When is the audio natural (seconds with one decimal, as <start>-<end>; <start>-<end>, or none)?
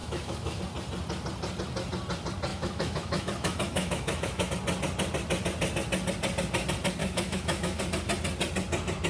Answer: 0.6-2.5; 4.5-7.0; 7.8-9.1